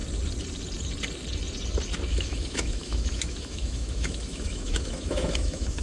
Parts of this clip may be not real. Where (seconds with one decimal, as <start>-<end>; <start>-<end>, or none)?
2.1-5.8